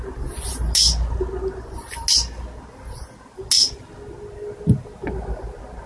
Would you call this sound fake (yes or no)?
no